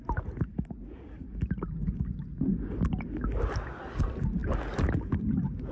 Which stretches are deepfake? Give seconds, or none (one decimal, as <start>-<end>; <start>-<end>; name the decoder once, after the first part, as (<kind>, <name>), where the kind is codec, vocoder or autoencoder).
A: none